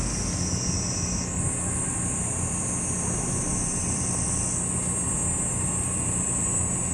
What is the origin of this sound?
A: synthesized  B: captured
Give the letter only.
B